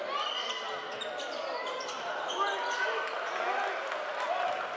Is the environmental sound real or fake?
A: real